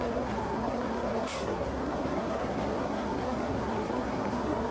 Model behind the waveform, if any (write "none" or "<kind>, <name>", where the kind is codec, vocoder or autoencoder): codec, SNAC